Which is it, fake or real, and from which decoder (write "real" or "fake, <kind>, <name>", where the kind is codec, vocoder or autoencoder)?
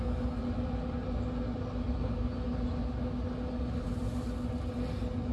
real